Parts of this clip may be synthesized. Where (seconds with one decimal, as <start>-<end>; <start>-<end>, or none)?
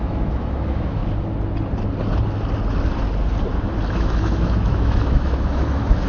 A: 0.0-1.0; 3.9-6.1